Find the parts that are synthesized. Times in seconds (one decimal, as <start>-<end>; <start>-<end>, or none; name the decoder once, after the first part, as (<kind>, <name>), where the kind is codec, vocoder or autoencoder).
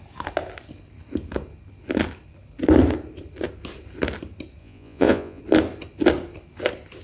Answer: 4.6-5.4 (vocoder, Vocos)